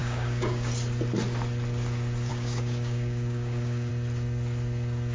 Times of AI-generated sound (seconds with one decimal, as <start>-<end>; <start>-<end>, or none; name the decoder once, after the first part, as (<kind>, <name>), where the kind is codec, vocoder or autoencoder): 0.0-0.7 (codec, DAC); 2.3-3.9